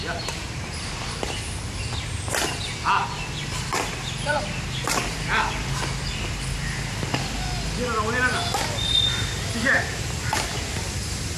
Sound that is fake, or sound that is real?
real